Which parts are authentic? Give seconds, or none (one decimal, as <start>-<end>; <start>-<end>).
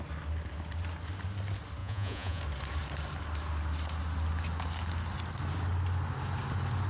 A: 0.0-1.8; 2.4-6.9